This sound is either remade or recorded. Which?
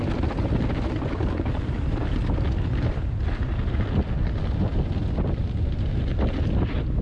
recorded